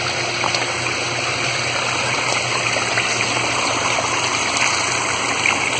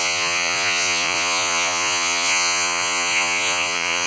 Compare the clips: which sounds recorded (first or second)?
first